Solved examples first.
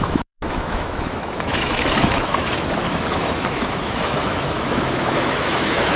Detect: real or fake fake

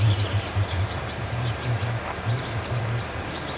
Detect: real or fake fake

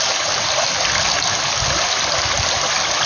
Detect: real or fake real